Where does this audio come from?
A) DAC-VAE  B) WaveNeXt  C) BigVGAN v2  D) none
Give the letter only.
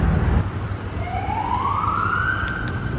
D